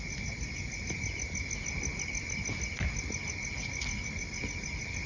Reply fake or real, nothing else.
real